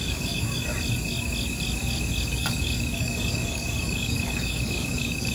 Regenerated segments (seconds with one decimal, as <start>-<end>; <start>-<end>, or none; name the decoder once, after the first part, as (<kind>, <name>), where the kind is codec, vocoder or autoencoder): 0.0-0.7 (codec, DAC); 2.3-5.3